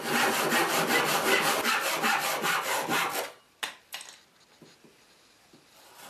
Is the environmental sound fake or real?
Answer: real